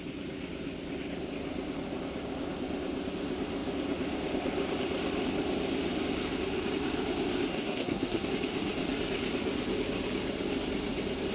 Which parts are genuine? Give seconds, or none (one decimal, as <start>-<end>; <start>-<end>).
0.0-7.5; 8.3-11.3